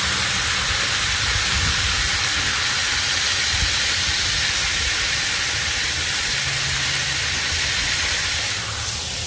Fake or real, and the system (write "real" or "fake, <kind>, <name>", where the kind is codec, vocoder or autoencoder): real